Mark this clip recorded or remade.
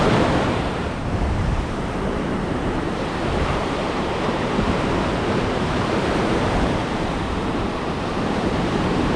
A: remade